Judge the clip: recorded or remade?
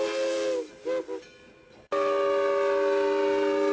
recorded